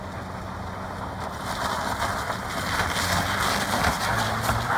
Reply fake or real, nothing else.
real